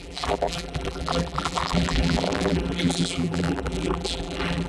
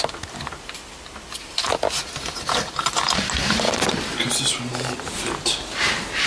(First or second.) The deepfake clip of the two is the first